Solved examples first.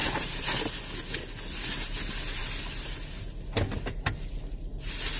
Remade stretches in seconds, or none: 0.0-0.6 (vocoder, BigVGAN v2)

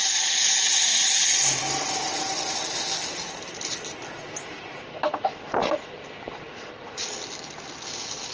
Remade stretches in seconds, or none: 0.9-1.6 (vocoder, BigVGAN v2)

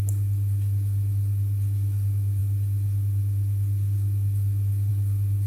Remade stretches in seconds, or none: none

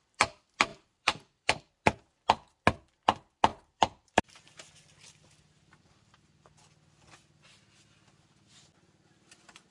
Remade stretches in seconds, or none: 0.7-1.7 (vocoder, BigVGAN v2); 3.5-4.2

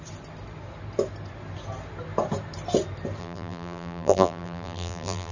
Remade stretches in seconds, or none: 3.2-5.3 (vocoder, BigVGAN v2)

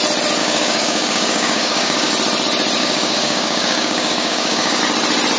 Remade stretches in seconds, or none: 0.4-2.1 (codec, DAC); 2.8-4.8

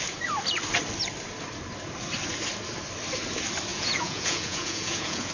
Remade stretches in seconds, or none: 3.7-5.3 (vocoder, Vocos)

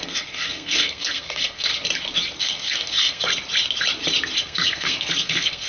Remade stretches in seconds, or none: 0.0-1.7 (codec, SNAC); 2.4-3.3; 4.4-5.7